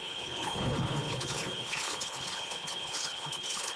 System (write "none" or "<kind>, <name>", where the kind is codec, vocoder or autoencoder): codec, HILCodec